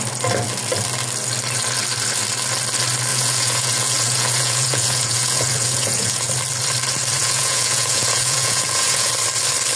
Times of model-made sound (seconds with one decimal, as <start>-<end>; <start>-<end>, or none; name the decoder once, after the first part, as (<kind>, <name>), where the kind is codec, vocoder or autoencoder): 3.1-6.3 (vocoder, Vocos); 7.2-9.1